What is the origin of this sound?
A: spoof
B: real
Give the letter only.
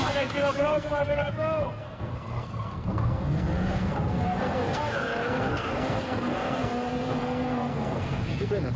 A